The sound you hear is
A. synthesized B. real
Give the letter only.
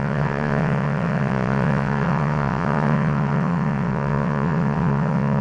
A